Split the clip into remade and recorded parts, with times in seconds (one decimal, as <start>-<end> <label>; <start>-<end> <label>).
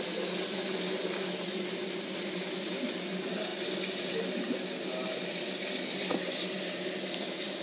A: 0.0-7.6 recorded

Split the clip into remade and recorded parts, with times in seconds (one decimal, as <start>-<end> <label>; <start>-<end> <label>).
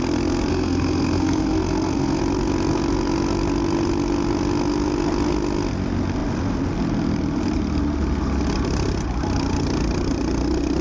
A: 0.0-0.5 recorded; 0.5-2.2 remade; 2.2-10.8 recorded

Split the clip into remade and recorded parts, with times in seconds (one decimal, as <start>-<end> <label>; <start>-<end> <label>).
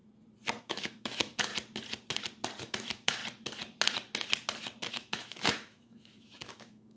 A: 0.0-0.6 recorded; 0.6-1.5 remade; 1.5-2.6 recorded; 2.6-3.2 remade; 3.2-4.9 recorded; 4.9-7.0 remade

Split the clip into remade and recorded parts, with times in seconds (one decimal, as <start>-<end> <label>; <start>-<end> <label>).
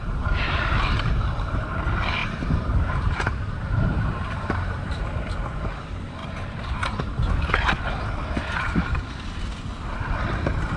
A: 0.0-0.7 remade; 0.7-2.2 recorded; 2.2-5.3 remade; 5.3-6.2 recorded; 6.2-7.5 remade; 7.5-10.8 recorded